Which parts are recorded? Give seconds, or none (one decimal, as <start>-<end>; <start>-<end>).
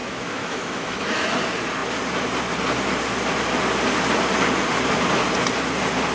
1.3-6.1